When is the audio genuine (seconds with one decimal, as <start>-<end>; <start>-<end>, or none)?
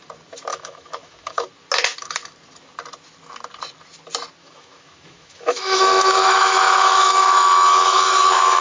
0.0-0.5; 1.5-4.4